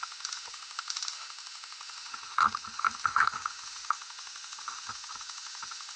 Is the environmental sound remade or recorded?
remade